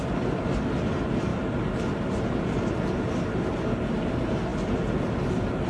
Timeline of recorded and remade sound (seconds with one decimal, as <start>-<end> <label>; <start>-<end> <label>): 0.0-5.7 recorded